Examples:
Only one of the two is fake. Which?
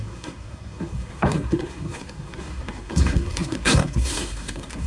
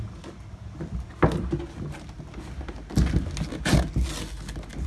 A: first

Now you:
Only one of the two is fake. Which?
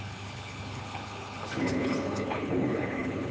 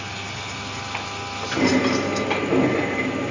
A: first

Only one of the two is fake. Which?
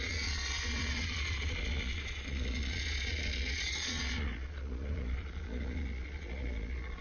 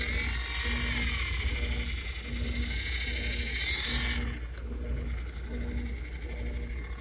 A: first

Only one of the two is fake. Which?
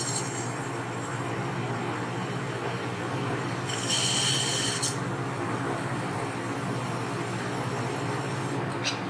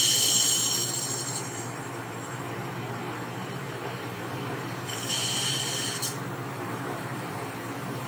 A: second